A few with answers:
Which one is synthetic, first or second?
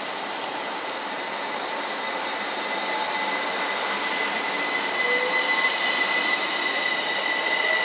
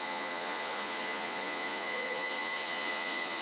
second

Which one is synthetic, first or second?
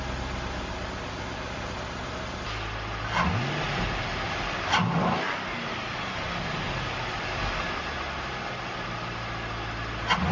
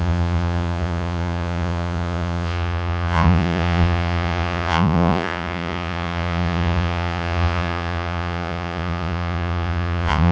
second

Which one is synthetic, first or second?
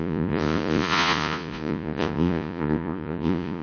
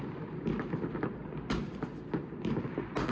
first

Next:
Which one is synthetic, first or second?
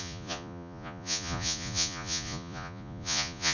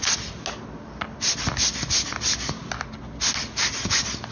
first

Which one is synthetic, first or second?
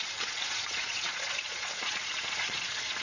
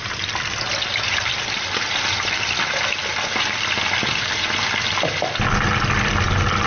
first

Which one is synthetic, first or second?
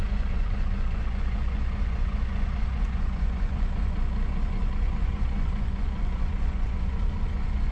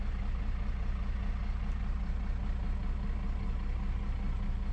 first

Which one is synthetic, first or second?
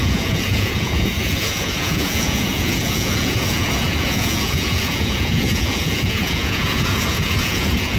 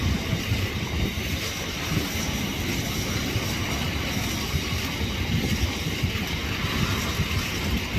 first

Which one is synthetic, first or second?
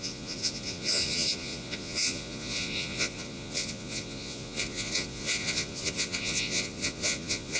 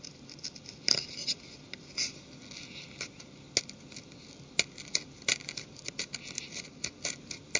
first